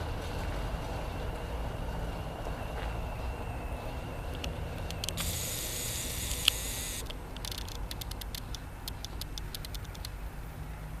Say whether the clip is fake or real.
real